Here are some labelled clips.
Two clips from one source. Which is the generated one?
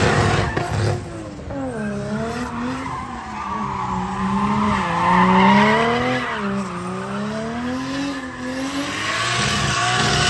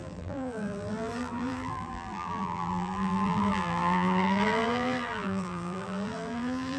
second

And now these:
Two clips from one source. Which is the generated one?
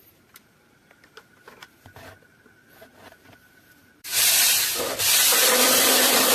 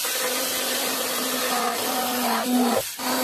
first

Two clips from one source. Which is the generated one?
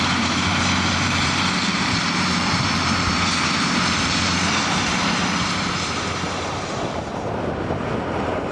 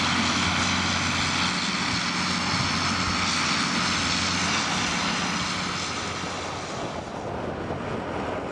first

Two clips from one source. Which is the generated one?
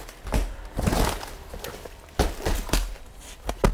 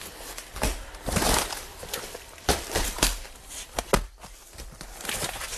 second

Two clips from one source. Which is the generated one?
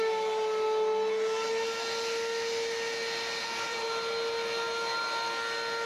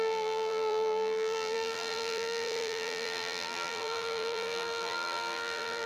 second